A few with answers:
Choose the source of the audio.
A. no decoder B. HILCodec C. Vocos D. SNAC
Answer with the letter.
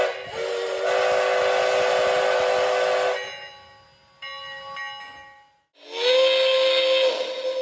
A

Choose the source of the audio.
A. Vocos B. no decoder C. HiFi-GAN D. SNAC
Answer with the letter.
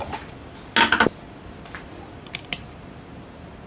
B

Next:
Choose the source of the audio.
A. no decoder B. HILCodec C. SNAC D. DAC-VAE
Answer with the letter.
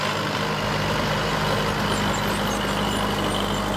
A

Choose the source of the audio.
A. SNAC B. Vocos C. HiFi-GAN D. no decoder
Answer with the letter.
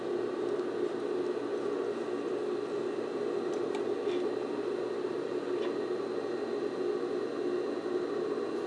D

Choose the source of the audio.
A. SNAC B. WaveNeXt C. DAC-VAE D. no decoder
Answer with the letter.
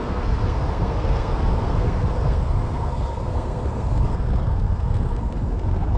A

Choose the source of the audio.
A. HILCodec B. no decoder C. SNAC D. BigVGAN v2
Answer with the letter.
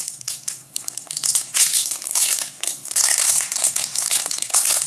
C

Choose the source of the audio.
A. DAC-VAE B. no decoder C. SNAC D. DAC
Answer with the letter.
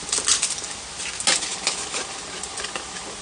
B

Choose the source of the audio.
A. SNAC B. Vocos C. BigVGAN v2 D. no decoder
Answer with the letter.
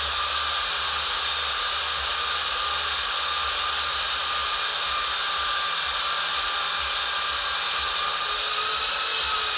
D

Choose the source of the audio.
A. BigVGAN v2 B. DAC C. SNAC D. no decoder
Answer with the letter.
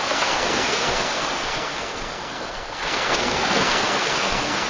C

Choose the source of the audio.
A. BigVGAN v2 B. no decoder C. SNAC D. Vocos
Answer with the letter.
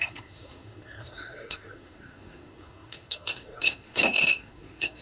C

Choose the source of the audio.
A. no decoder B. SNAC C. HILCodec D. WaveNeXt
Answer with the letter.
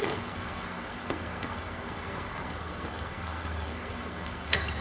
B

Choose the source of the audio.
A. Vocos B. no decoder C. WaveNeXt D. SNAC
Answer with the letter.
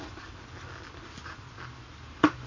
B